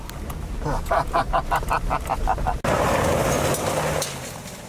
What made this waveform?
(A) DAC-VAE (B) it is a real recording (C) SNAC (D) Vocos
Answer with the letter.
B